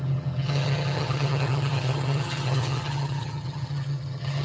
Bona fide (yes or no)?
no